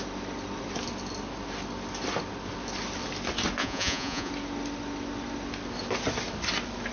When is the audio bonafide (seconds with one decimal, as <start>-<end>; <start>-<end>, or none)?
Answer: 0.0-3.6; 4.3-6.9